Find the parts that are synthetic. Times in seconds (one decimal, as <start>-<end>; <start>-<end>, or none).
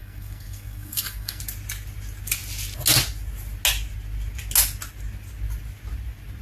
0.0-1.4